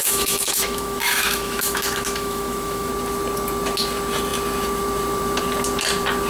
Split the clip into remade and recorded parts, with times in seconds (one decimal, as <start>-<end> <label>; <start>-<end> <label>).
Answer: 0.0-2.9 remade; 2.9-6.3 recorded